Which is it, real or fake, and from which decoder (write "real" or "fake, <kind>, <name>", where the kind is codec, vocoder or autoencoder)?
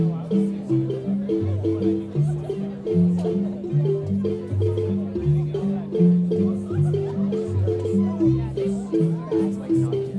real